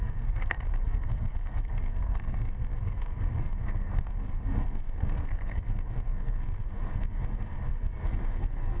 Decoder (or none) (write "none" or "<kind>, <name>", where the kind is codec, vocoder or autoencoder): codec, SNAC